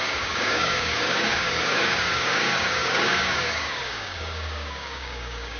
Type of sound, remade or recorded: remade